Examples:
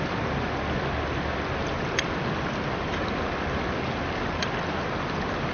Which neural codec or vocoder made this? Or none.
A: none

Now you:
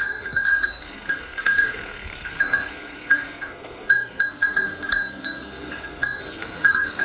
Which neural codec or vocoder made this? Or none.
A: codec, SNAC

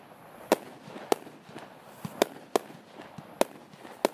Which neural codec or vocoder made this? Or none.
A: none